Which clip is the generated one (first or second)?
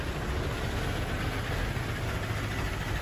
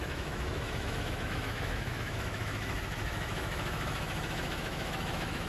second